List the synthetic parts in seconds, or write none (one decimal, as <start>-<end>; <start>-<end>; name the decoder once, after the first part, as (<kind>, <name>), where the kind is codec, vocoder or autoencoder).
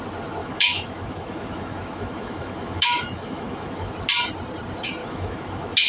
0.4-3.9 (autoencoder, DAC-VAE); 5.0-5.9